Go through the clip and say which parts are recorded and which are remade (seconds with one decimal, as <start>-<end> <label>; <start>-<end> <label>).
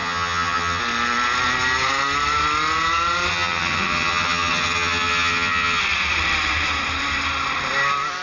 0.0-0.8 remade; 0.8-3.3 recorded; 3.3-5.8 remade; 5.8-8.2 recorded